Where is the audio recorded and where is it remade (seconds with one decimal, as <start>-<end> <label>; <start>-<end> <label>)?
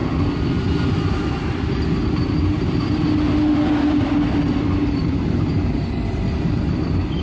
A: 0.0-7.2 recorded